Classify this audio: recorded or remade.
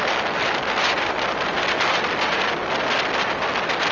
recorded